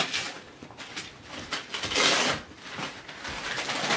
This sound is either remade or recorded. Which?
recorded